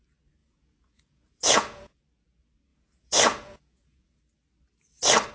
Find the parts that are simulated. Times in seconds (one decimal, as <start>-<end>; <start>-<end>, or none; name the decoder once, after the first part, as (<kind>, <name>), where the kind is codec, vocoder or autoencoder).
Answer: 0.4-2.0 (vocoder, Vocos); 2.7-4.2